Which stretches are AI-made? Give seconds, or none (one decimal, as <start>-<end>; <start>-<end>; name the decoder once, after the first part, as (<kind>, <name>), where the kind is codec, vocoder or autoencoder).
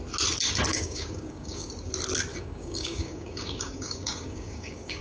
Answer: 0.7-1.7 (codec, DAC); 2.3-5.0